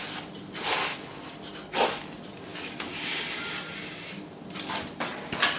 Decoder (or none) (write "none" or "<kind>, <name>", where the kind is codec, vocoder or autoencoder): none